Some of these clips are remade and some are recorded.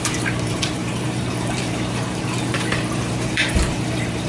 remade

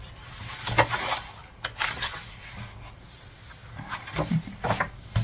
recorded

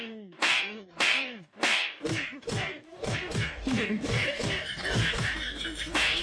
remade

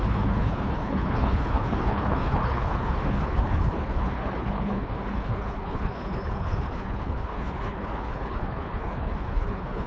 remade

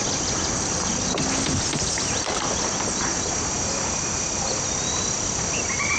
recorded